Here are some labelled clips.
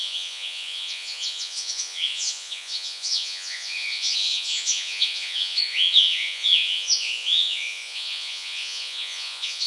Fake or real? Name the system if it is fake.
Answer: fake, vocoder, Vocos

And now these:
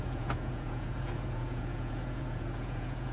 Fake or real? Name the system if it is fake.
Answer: fake, vocoder, Vocos